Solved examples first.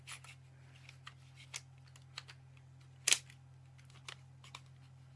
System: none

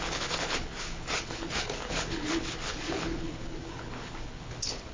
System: codec, HILCodec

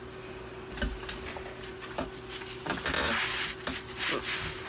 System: none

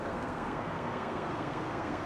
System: codec, SNAC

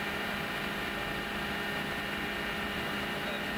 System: none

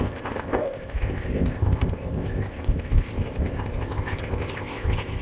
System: codec, ZipCodec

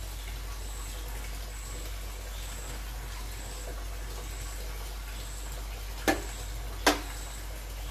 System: none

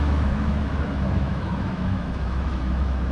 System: autoencoder, DAC-VAE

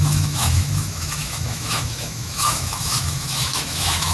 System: autoencoder, DAC-VAE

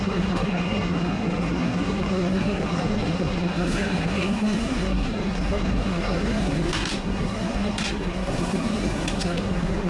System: codec, SNAC